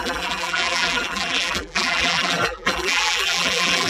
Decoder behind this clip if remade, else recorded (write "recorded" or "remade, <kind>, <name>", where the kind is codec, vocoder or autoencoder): remade, vocoder, BigVGAN v2